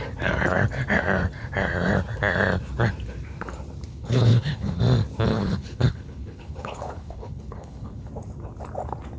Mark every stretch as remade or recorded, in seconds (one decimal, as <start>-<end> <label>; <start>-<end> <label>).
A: 0.0-3.9 recorded; 3.9-4.8 remade; 4.8-5.3 recorded; 5.3-8.1 remade; 8.1-9.2 recorded